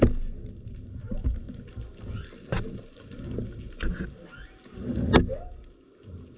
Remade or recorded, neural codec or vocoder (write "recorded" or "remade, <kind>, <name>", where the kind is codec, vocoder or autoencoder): recorded